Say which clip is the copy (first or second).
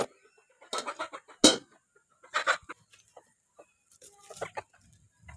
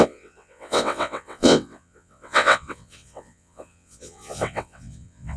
second